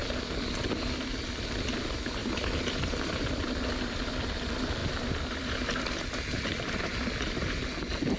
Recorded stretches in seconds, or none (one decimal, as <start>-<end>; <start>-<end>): 0.0-2.2; 3.6-4.8; 5.8-8.2